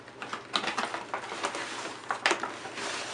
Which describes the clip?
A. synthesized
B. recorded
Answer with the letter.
B